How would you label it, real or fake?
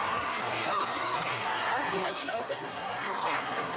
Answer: fake